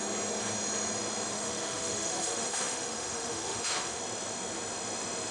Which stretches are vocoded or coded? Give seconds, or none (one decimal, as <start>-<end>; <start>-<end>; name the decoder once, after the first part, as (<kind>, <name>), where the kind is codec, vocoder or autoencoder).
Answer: 1.3-4.0 (autoencoder, DAC-VAE)